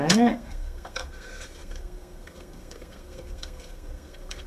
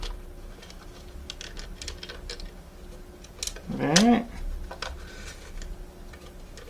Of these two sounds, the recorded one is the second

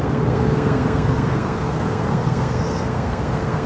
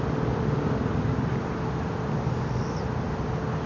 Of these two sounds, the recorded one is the second